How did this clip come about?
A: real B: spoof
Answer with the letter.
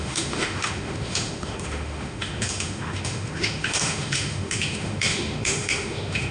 B